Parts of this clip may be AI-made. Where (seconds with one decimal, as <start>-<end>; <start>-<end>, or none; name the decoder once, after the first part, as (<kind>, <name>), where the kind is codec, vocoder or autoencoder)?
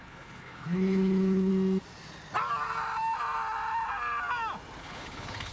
0.0-1.5 (codec, HILCodec); 4.8-5.5